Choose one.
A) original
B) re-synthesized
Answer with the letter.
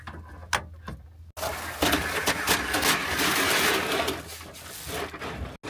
A